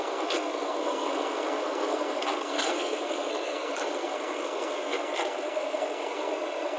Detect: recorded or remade remade